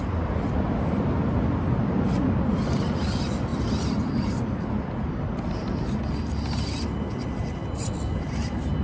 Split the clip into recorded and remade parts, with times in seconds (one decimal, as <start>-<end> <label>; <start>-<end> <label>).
0.0-8.8 recorded